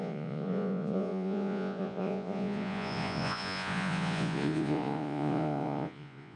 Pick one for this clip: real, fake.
fake